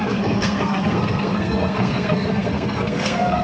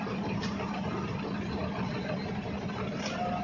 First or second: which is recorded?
second